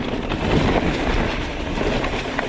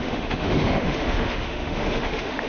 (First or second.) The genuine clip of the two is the first